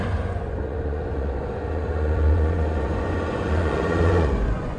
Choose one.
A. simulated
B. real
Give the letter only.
A